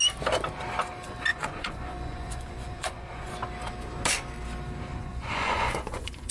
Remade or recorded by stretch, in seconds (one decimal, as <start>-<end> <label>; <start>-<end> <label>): 0.0-1.3 recorded; 1.3-3.3 remade; 3.3-4.9 recorded; 4.9-6.3 remade